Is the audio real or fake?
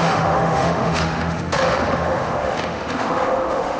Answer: fake